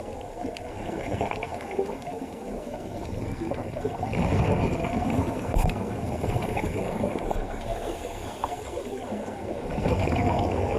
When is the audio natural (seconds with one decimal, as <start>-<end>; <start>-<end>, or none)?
none